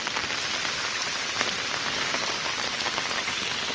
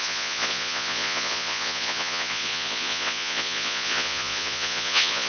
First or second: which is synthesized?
second